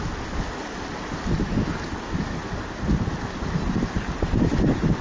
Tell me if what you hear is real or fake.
real